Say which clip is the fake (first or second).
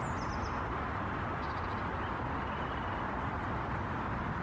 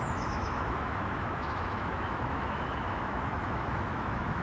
second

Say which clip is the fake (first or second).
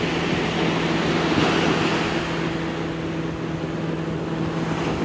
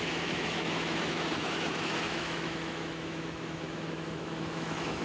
second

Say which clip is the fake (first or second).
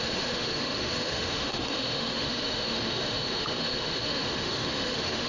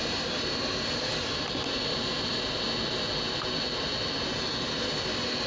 first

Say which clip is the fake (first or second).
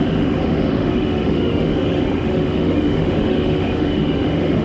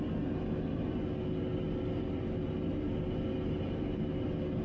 first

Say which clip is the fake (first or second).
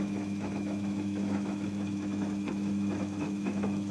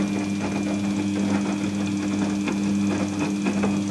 first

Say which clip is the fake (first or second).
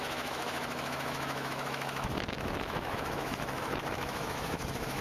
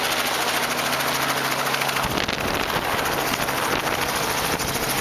first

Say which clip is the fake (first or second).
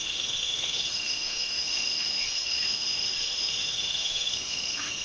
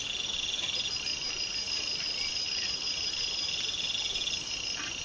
first